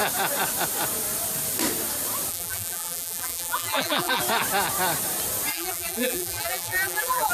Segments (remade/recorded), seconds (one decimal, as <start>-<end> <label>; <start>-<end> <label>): 0.0-2.3 recorded; 2.3-4.2 remade; 4.2-5.5 recorded; 5.5-7.3 remade